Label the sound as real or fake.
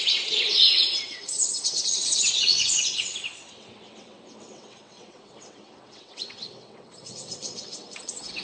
fake